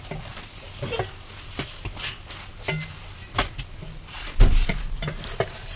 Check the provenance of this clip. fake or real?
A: real